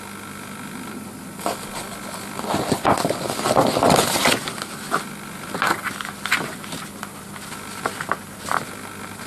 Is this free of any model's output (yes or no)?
yes